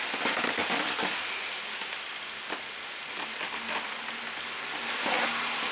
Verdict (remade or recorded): recorded